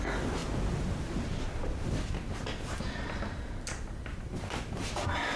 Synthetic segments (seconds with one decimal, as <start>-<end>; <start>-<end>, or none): none